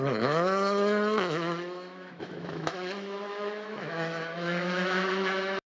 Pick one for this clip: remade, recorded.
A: remade